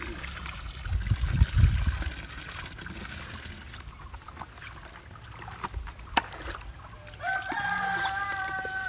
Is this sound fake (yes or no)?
no